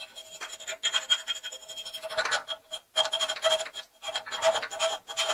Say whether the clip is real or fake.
real